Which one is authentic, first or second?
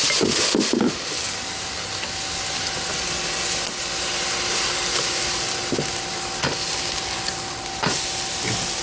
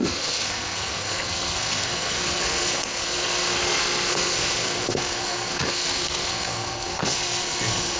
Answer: first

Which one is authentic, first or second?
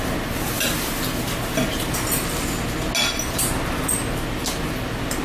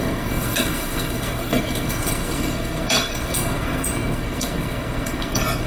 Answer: first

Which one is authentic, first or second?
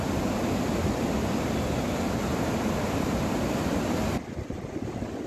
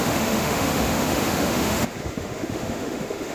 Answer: first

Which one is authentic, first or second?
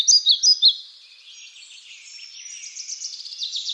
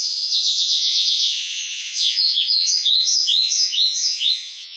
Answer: first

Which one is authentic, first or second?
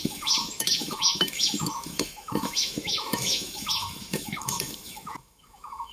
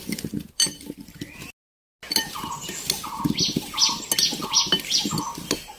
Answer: second